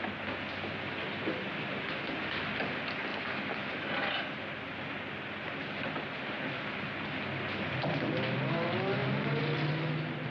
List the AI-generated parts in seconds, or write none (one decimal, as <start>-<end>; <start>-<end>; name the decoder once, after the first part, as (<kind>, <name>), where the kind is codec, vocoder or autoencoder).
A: none